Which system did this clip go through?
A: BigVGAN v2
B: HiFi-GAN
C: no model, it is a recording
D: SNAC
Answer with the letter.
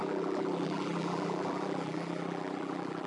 A